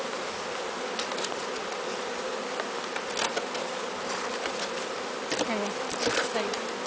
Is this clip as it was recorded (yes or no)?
yes